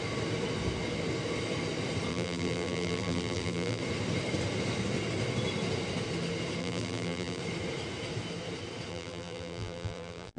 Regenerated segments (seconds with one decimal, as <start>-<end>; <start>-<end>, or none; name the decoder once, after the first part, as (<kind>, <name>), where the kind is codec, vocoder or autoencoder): 2.1-3.8 (vocoder, BigVGAN v2); 6.6-7.4; 8.9-10.4

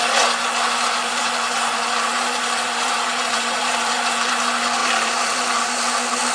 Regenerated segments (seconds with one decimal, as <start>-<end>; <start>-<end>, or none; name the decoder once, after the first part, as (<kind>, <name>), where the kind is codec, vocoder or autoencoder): 1.2-4.3 (vocoder, BigVGAN v2); 4.8-5.8

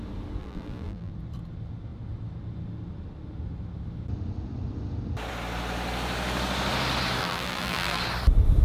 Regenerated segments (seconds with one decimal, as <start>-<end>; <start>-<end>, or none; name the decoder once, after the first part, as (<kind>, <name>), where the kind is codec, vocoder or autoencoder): 0.4-1.1 (vocoder, BigVGAN v2); 7.2-8.0

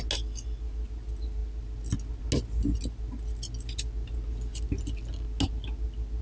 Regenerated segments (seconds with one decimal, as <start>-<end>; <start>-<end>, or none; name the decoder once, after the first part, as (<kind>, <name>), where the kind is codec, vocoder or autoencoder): none

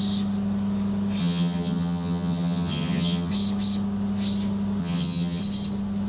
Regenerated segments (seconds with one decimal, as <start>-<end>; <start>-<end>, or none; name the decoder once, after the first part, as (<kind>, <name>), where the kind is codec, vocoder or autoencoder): 1.2-3.3 (vocoder, HiFi-GAN); 4.8-5.4